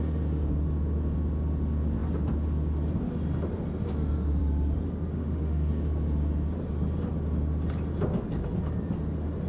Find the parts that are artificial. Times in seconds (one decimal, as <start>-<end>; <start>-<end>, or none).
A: 5.1-5.7